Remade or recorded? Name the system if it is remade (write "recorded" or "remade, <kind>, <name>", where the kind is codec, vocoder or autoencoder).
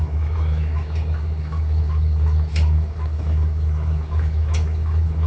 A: remade, autoencoder, DAC-VAE